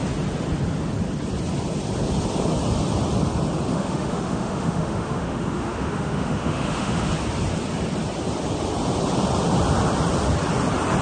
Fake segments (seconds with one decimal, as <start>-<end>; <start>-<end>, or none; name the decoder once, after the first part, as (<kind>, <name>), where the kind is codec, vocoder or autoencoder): 3.7-7.1 (autoencoder, DAC-VAE)